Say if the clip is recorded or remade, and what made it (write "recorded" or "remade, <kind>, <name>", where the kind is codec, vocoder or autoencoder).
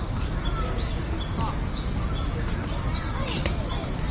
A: recorded